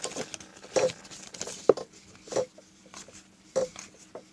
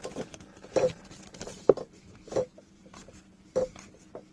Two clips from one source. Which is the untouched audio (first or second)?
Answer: first